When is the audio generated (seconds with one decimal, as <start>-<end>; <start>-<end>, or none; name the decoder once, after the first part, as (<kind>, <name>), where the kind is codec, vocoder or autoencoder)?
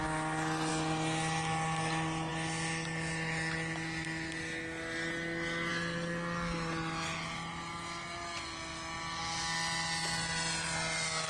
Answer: none